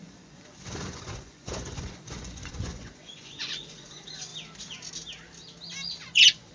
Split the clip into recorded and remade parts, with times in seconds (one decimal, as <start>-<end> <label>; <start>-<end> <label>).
0.0-4.3 remade; 4.3-6.0 recorded; 6.0-6.5 remade